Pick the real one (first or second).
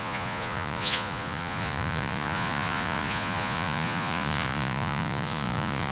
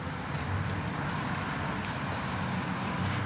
second